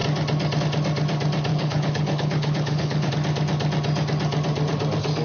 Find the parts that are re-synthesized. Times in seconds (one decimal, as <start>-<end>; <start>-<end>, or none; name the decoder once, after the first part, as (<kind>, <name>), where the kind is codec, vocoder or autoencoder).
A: 1.5-3.1 (codec, HILCodec)